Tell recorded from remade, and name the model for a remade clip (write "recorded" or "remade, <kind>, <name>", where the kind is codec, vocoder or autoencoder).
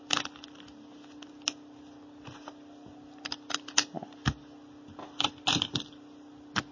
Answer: recorded